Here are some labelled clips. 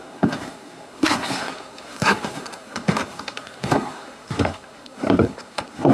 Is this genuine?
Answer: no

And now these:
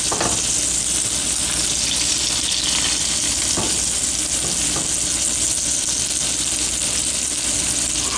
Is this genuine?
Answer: yes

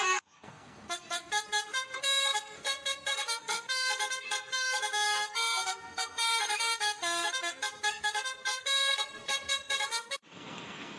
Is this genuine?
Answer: no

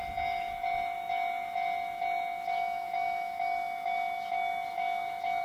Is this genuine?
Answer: no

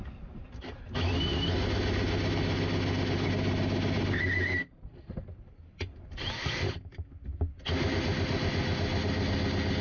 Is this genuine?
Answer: yes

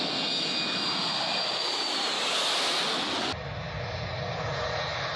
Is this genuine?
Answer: yes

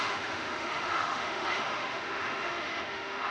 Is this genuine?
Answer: no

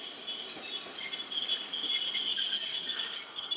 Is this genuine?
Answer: yes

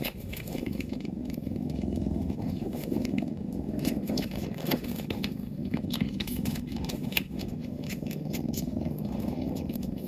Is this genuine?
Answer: no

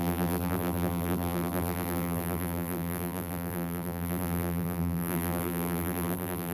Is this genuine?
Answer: no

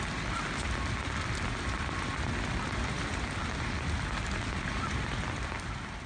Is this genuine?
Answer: yes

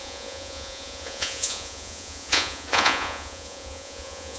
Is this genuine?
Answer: no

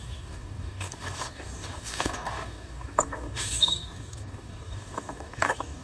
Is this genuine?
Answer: no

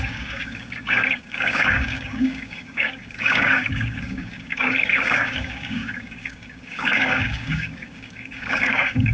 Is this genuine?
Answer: no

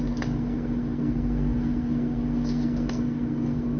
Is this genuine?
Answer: no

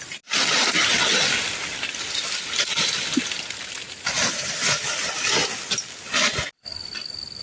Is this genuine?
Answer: yes